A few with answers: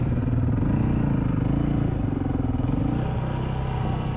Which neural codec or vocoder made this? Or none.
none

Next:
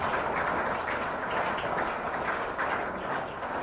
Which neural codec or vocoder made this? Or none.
none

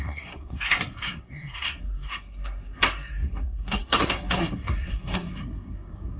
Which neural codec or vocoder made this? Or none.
codec, SNAC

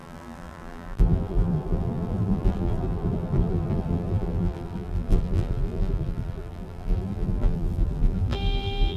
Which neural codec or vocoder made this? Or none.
vocoder, BigVGAN v2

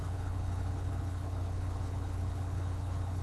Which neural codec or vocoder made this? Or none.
codec, HILCodec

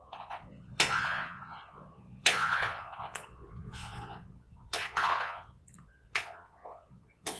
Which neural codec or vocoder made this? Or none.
vocoder, Vocos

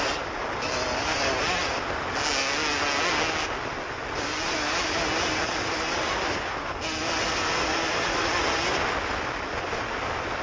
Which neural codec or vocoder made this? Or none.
none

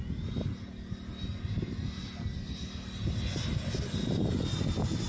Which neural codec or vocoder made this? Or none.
none